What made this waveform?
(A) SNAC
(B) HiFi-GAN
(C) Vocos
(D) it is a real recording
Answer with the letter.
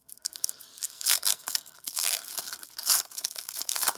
A